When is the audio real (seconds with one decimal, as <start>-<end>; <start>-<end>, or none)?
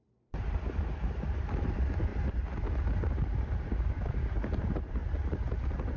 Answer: 2.1-3.8; 5.0-6.0